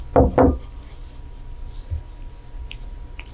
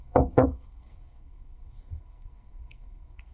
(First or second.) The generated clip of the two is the second